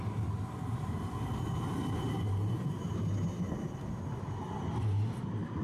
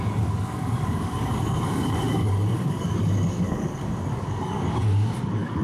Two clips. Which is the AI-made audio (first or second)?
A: second